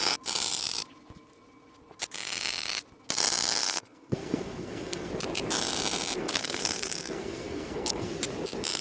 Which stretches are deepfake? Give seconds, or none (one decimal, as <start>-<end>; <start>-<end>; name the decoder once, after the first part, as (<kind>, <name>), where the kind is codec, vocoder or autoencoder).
3.6-5.1 (codec, SNAC); 6.2-8.1